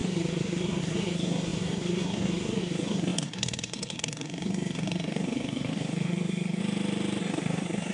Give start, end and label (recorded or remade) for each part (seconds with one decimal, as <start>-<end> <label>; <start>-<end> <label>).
0.0-6.6 remade; 6.6-7.2 recorded; 7.2-7.9 remade